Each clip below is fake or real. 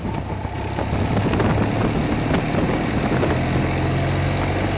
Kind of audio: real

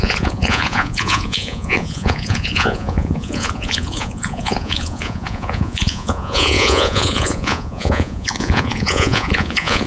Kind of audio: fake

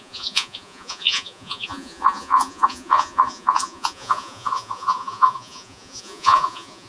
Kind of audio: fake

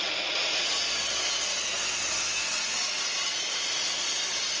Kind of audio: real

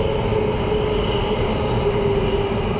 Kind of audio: real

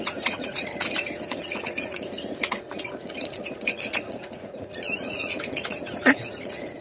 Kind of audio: fake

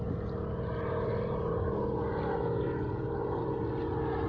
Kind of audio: real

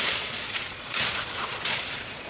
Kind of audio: fake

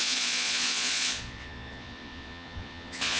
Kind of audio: fake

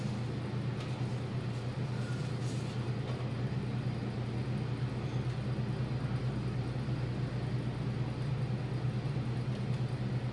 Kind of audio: real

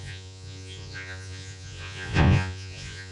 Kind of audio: fake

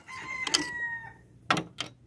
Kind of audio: real